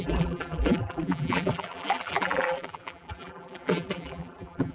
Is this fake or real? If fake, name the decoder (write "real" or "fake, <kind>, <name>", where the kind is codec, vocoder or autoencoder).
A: fake, vocoder, BigVGAN v2